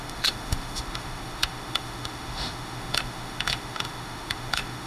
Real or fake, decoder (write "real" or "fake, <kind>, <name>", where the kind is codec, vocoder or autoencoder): fake, autoencoder, DAC-VAE